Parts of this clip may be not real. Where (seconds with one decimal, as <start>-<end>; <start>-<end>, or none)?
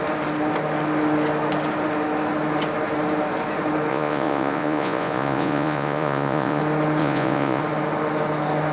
3.9-6.6; 7.0-7.6